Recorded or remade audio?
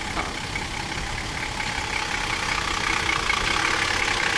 recorded